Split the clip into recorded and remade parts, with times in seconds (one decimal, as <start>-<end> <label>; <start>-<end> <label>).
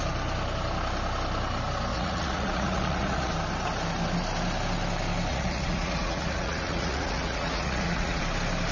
0.0-1.9 recorded; 1.9-3.3 remade; 3.3-5.3 recorded; 5.3-8.2 remade; 8.2-8.7 recorded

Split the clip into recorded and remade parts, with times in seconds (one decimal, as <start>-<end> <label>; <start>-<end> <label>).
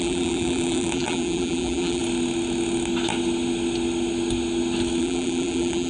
0.0-2.0 remade; 2.0-5.0 recorded; 5.0-5.9 remade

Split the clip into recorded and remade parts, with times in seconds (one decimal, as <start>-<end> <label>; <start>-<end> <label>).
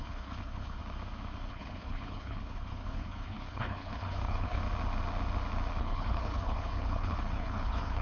0.0-0.8 remade; 0.8-1.5 recorded; 1.5-4.6 remade; 4.6-5.8 recorded; 5.8-8.0 remade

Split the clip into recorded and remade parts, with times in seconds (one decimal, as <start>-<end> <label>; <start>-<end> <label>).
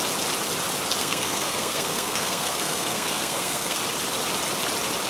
0.0-1.0 recorded; 1.0-3.8 remade; 3.8-5.1 recorded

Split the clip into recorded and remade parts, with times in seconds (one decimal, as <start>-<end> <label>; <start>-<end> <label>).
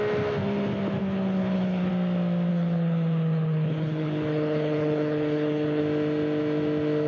0.0-1.0 recorded; 1.0-1.9 remade; 1.9-2.5 recorded; 2.5-5.8 remade; 5.8-7.1 recorded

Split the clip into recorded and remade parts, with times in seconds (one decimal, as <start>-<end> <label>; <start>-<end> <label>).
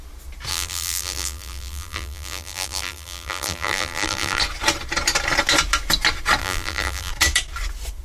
0.0-0.5 recorded; 0.5-4.4 remade; 4.4-6.4 recorded; 6.4-7.1 remade; 7.1-8.0 recorded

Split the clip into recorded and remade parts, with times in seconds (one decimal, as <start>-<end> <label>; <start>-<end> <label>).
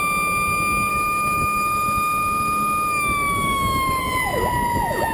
0.0-0.9 recorded; 0.9-4.0 remade; 4.0-5.1 recorded